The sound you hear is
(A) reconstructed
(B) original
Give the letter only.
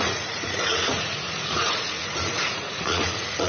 A